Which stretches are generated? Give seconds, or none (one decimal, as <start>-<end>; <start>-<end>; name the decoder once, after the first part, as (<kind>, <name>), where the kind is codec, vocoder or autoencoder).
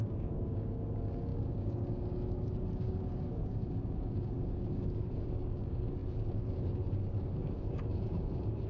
0.0-8.7 (codec, DAC)